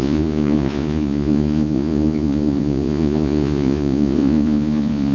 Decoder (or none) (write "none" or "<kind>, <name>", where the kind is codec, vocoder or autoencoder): vocoder, Vocos